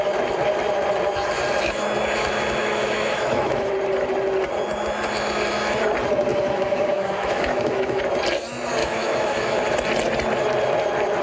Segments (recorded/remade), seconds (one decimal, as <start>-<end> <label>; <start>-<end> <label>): 0.0-2.6 recorded; 2.6-3.7 remade; 3.7-6.3 recorded; 6.3-8.0 remade; 8.0-8.8 recorded; 8.8-9.6 remade; 9.6-11.2 recorded